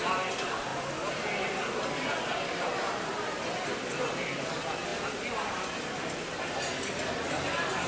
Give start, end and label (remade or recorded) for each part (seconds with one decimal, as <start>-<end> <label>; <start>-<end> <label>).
0.0-7.9 recorded

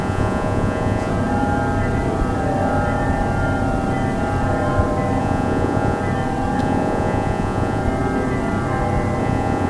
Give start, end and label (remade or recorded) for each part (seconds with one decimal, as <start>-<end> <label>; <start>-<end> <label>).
0.0-1.1 remade; 1.1-5.2 recorded; 5.2-6.0 remade; 6.0-6.6 recorded; 6.6-7.8 remade; 7.8-9.2 recorded; 9.2-9.7 remade

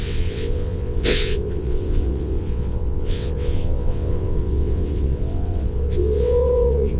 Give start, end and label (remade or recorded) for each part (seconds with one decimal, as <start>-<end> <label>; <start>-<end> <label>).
0.0-7.0 remade

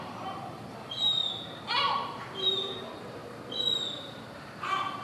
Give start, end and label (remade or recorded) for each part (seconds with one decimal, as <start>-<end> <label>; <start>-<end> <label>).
0.0-3.2 remade; 3.2-3.8 recorded; 3.8-5.0 remade

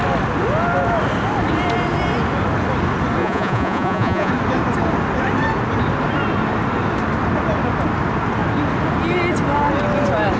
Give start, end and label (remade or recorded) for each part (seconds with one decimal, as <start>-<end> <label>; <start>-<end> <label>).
0.0-3.2 recorded; 3.2-4.3 remade; 4.3-10.4 recorded